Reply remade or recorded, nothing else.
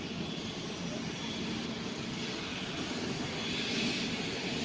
recorded